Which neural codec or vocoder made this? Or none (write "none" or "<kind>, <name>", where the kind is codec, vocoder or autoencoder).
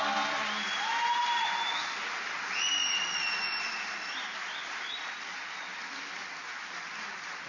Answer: none